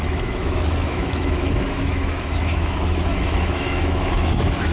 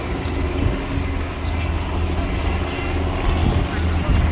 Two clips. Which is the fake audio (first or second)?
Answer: first